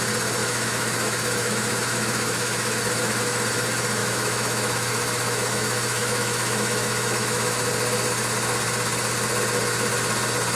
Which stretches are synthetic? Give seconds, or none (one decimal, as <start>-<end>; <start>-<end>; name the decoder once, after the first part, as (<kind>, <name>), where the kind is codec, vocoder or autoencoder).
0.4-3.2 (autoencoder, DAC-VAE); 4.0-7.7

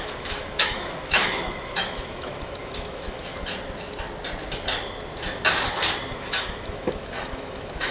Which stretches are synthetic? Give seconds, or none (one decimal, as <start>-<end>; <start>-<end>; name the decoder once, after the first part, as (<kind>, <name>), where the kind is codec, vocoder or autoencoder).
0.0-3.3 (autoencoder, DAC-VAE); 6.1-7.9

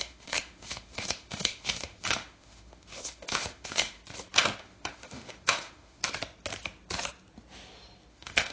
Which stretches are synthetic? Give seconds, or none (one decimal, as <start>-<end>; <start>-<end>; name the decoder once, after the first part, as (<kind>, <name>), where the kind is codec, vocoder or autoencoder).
0.0-4.0 (autoencoder, DAC-VAE); 4.6-6.0; 8.1-8.5